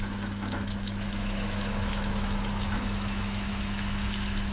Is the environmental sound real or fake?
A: fake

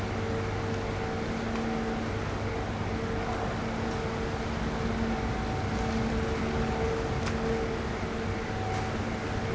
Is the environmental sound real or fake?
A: real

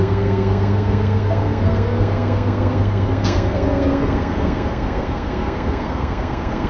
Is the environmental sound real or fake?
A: fake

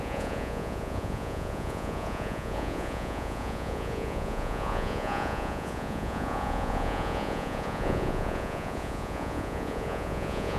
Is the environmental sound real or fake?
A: fake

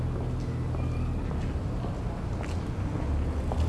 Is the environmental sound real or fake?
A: real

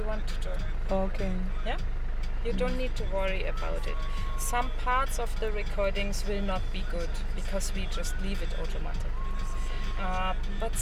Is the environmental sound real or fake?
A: real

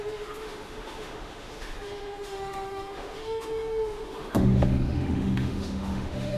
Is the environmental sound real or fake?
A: fake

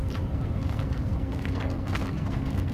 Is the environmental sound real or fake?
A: fake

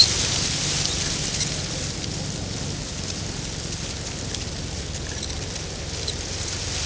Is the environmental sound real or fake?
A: real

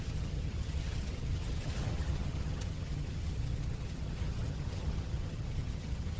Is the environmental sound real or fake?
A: fake